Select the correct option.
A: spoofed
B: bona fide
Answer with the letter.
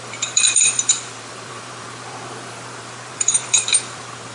A